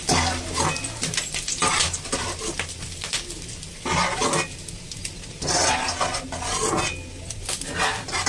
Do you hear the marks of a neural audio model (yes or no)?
no